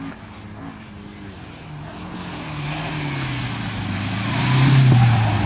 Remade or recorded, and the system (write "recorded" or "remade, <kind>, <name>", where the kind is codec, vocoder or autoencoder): recorded